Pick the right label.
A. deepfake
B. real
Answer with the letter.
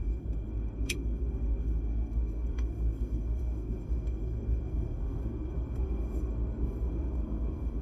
A